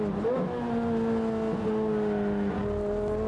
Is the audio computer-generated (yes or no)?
no